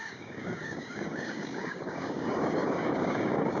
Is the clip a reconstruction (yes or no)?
yes